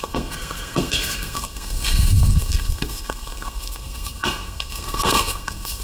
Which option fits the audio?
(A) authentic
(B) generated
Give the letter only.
B